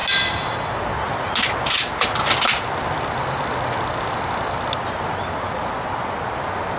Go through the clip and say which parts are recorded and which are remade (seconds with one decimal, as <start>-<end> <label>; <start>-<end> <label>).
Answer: 0.0-6.8 recorded